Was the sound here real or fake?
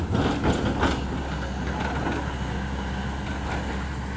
real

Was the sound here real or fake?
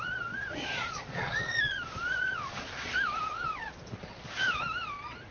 fake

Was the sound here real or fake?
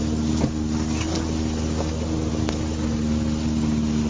real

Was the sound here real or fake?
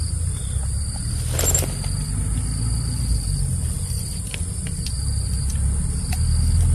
real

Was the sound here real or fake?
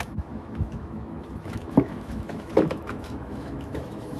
fake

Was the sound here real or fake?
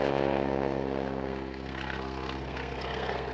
fake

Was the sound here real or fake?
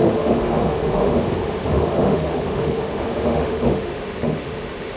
fake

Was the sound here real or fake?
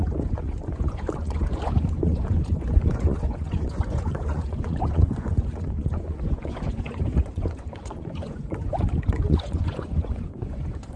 fake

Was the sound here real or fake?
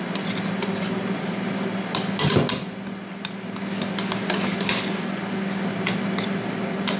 real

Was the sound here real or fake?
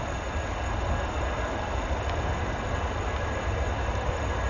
real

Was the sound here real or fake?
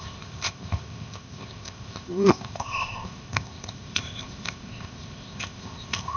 fake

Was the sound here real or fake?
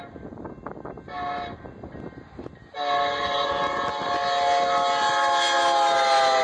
real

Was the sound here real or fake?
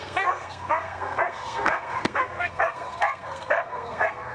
fake